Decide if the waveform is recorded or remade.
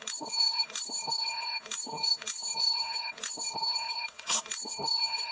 remade